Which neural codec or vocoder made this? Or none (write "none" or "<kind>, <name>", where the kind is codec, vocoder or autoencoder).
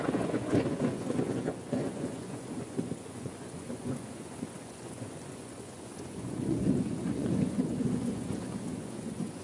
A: vocoder, Vocos